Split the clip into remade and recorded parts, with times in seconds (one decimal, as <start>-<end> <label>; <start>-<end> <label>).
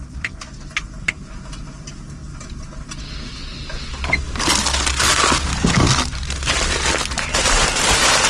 0.0-2.2 remade; 2.2-7.1 recorded; 7.1-8.3 remade